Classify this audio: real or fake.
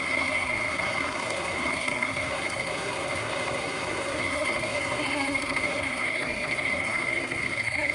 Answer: fake